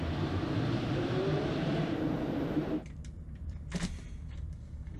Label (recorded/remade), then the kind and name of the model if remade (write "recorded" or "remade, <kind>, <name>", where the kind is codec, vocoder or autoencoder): remade, vocoder, BigVGAN v2